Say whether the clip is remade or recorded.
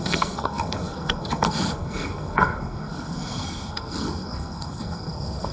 remade